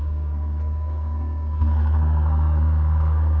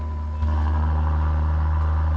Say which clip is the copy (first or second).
first